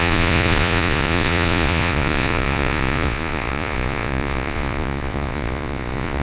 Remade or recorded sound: remade